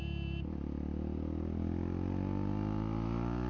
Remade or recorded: recorded